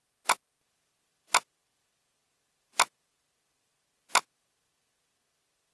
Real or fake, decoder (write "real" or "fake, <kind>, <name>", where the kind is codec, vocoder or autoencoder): real